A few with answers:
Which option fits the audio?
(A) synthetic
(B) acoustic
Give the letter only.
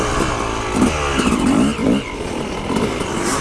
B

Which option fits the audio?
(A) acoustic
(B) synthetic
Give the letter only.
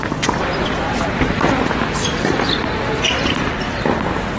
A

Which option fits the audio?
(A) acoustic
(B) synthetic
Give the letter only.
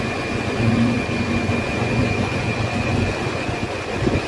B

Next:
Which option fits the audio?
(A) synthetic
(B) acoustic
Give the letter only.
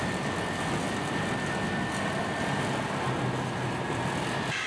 B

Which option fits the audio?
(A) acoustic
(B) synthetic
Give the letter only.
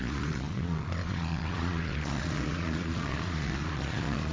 B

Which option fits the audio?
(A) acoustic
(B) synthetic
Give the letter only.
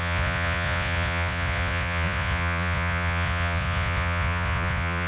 B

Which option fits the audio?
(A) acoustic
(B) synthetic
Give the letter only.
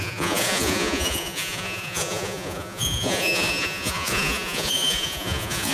B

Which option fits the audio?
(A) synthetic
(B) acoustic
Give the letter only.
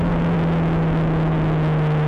B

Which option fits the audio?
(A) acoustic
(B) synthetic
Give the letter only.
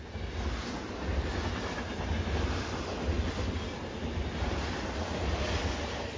A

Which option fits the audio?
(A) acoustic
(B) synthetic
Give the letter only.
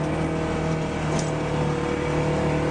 A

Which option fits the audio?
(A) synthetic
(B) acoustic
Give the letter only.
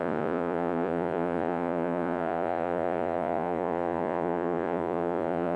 A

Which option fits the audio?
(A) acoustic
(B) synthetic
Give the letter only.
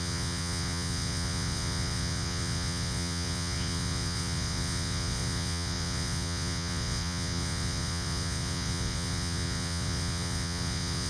B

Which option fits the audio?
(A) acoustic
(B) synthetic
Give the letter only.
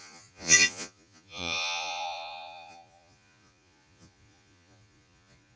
B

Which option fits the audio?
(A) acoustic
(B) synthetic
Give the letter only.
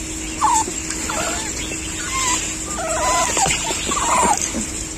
A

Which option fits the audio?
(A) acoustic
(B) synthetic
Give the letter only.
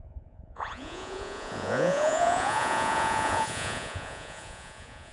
B